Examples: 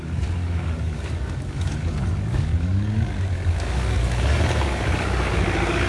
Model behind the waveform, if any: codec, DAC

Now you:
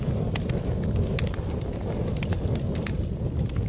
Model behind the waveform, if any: none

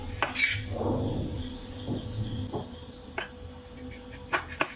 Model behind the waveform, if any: none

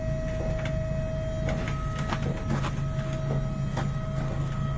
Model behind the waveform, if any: none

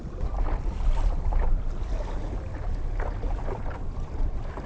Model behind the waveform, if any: none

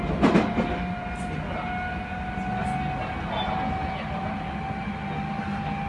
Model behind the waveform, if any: none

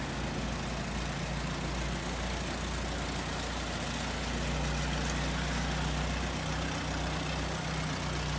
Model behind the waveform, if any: none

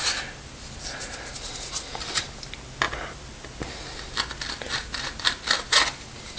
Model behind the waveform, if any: none